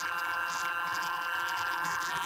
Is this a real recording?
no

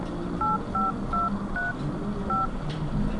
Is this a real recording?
yes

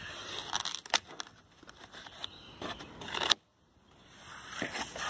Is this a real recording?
yes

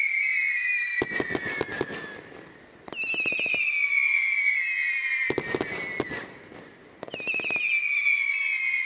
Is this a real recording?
yes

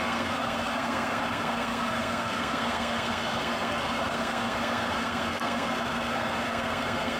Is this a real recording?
no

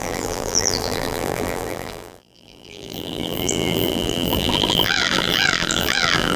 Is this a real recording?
no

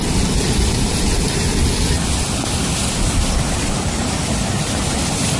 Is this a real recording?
yes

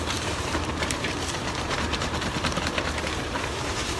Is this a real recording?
no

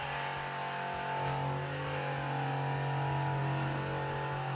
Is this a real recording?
yes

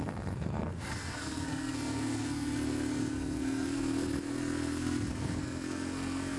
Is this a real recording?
no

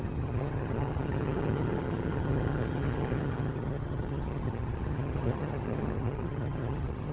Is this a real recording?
no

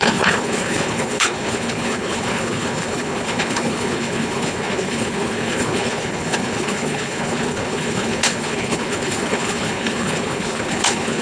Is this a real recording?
no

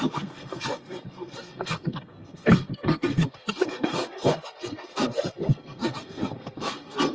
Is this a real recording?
no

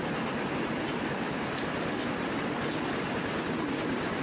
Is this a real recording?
yes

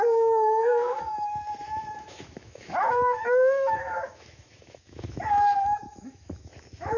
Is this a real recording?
no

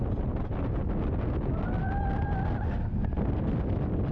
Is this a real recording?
yes